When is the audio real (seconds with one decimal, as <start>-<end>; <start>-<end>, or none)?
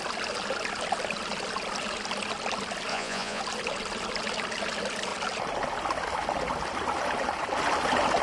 0.0-2.9; 3.4-8.2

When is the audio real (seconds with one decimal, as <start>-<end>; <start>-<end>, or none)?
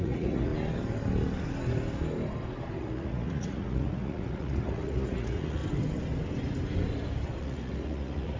0.5-2.8; 5.6-7.4